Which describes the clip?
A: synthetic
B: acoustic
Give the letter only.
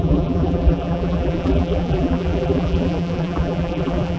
A